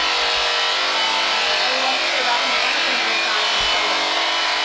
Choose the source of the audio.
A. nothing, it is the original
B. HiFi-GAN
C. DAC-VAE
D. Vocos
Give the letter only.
A